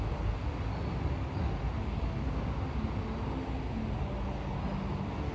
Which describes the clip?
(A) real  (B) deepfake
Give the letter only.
A